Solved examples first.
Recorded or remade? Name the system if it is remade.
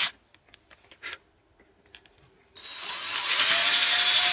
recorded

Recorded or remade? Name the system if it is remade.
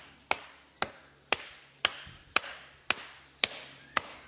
recorded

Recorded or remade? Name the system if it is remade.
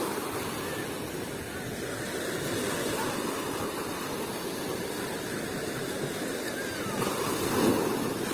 recorded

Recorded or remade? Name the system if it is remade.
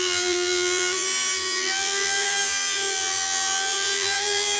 remade, vocoder, BigVGAN v2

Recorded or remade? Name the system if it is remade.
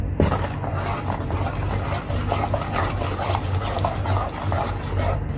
recorded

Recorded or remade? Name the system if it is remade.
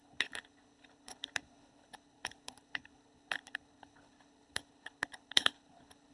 remade, codec, HILCodec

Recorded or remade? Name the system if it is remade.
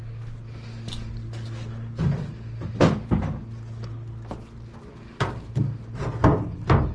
recorded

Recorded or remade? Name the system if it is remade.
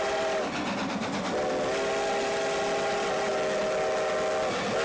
recorded